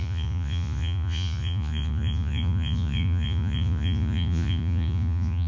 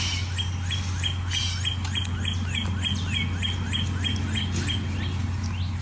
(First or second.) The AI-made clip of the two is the first